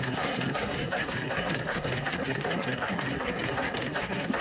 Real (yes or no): no